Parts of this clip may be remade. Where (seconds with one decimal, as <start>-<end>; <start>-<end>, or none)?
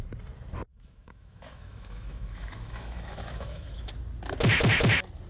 0.7-3.9